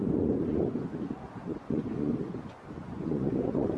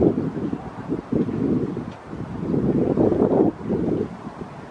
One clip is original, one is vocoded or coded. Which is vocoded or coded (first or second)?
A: first